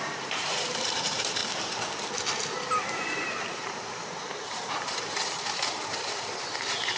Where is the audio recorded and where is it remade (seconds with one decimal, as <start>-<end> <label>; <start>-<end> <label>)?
0.0-1.4 remade; 1.4-2.6 recorded; 2.6-7.0 remade